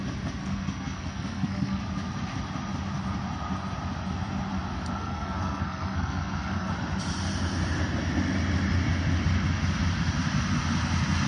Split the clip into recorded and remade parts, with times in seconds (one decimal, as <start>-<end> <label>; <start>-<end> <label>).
0.0-0.4 recorded; 0.4-1.8 remade; 1.8-5.0 recorded; 5.0-6.7 remade; 6.7-11.3 recorded